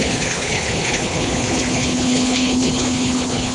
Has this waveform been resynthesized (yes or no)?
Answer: yes